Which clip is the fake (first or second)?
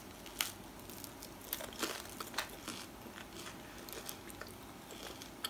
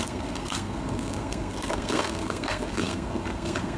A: second